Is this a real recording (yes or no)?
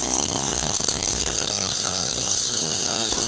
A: no